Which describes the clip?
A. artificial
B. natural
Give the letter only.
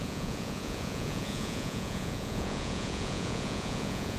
A